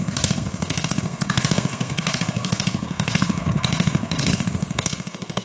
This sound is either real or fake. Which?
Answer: fake